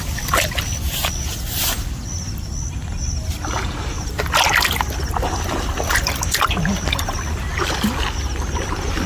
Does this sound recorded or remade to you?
recorded